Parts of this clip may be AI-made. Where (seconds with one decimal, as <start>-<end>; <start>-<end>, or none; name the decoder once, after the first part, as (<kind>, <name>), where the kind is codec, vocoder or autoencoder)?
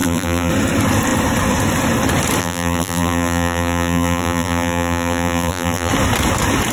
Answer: 0.0-0.5 (vocoder, BigVGAN v2); 2.4-5.9